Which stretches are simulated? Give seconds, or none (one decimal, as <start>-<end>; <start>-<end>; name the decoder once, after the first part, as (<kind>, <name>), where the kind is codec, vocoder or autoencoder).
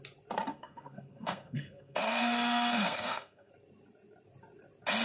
0.5-3.5 (codec, SNAC)